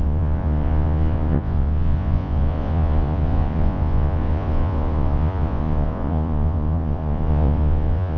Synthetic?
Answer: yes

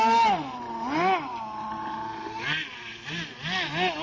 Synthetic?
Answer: no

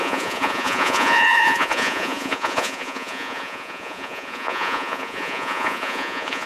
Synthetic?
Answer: yes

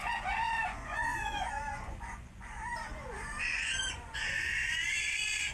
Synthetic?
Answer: yes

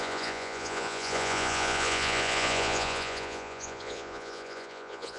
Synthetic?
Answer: yes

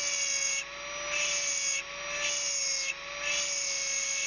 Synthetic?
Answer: no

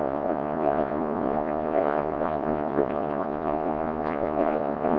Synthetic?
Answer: yes